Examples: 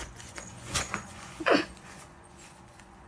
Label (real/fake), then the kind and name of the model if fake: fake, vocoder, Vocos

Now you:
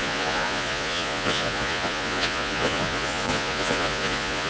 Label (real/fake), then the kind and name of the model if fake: fake, vocoder, Vocos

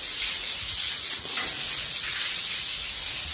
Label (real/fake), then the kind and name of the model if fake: fake, vocoder, Vocos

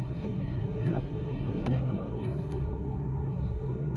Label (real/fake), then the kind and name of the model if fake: fake, codec, SNAC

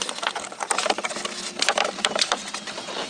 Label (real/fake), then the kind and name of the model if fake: real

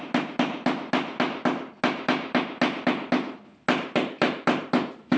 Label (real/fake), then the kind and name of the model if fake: real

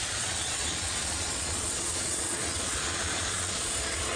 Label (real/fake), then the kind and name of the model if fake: fake, vocoder, Vocos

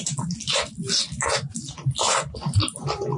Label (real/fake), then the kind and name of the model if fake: real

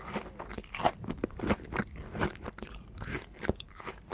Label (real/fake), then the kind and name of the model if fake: real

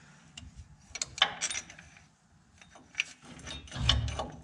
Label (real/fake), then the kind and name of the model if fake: real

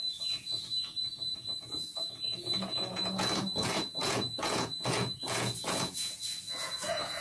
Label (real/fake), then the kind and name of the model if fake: fake, vocoder, Vocos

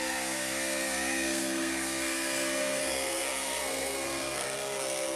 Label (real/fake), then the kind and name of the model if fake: fake, codec, SNAC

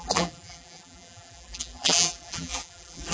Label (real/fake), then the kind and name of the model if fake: fake, vocoder, BigVGAN v2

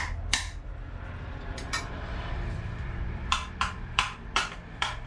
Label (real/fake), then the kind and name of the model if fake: fake, vocoder, BigVGAN v2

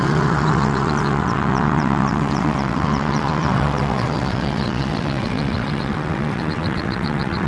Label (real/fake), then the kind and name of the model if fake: fake, vocoder, WaveNeXt